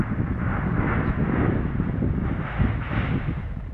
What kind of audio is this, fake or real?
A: real